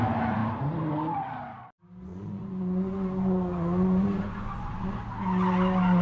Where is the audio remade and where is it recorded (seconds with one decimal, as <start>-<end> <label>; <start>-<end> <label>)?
0.0-2.1 recorded; 2.1-5.0 remade; 5.0-6.0 recorded

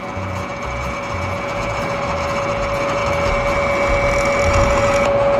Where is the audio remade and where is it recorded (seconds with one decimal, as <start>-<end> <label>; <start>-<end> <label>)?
0.0-3.0 remade; 3.0-4.5 recorded; 4.5-5.4 remade

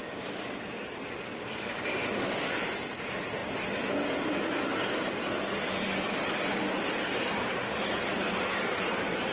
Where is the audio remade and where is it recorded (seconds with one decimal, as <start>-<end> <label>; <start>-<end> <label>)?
0.0-9.3 recorded

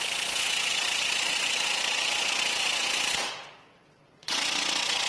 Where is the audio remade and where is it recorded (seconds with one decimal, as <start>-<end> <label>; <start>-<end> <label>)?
0.0-5.1 remade

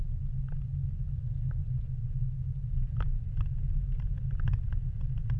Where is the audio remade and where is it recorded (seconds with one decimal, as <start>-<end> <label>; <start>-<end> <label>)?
0.0-5.4 recorded

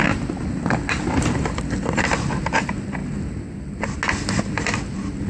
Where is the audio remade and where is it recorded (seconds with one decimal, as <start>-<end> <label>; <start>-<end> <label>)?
0.0-5.3 recorded